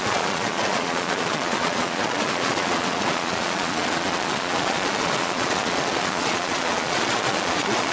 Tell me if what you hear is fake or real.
fake